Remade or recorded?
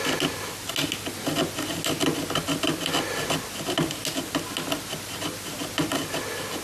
recorded